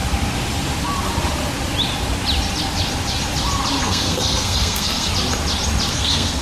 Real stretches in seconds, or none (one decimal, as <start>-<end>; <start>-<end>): 0.0-3.8; 5.1-5.9